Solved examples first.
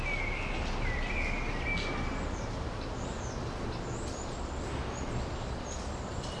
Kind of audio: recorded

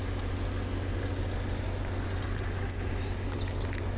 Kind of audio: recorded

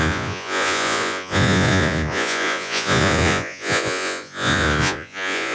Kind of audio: remade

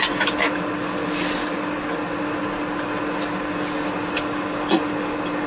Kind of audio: recorded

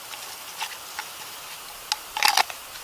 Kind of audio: recorded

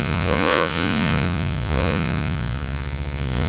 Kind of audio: remade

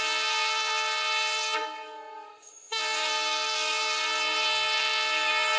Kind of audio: remade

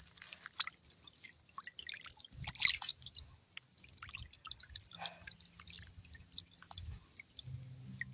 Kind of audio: recorded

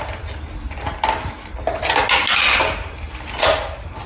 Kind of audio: recorded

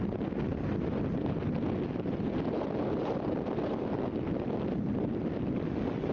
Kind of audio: recorded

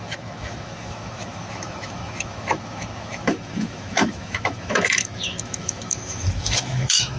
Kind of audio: remade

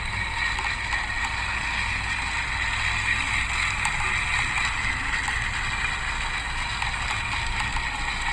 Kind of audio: recorded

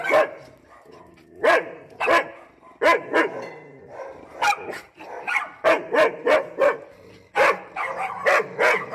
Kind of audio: recorded